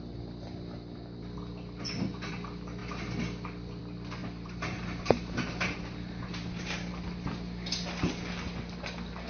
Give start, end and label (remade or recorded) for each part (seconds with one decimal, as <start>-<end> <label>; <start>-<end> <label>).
0.0-4.2 recorded; 4.2-6.9 remade; 6.9-9.3 recorded